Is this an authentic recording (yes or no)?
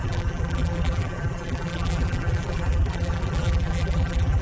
no